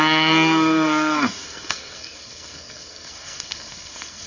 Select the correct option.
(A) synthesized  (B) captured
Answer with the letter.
A